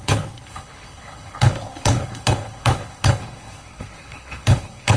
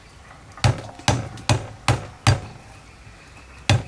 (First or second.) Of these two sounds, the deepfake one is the first